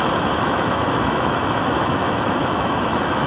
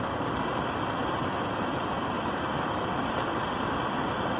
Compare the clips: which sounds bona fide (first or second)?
second